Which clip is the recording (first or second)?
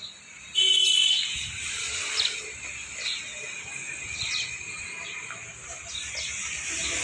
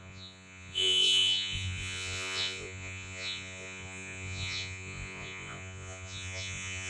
first